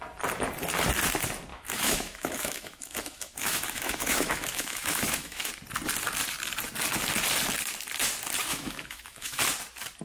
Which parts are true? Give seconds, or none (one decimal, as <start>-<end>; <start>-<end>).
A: 0.0-1.5; 5.5-8.5; 9.4-10.0